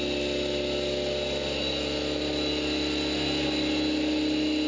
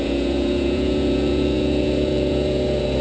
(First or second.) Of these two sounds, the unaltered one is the first